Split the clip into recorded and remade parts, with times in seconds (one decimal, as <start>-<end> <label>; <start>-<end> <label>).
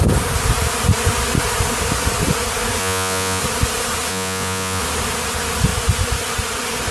0.0-2.8 recorded; 2.8-3.4 remade; 3.4-4.1 recorded; 4.1-4.8 remade; 4.8-6.9 recorded